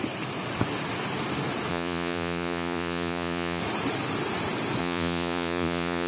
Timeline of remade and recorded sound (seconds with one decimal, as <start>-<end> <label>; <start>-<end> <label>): 0.0-1.7 recorded; 1.7-3.6 remade; 3.6-4.8 recorded; 4.8-6.1 remade